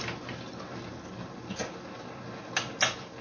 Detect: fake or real real